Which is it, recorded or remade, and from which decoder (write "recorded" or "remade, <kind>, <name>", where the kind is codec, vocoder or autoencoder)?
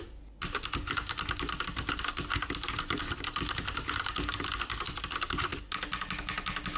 recorded